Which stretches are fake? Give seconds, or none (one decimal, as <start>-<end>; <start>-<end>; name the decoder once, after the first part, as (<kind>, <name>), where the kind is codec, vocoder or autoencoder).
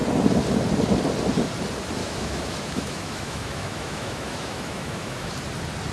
2.0-5.3 (autoencoder, DAC-VAE)